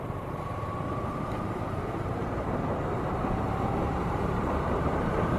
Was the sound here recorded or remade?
remade